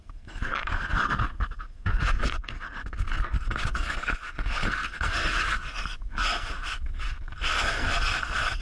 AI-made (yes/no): yes